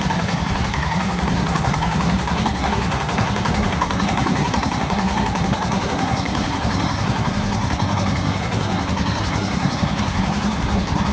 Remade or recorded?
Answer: remade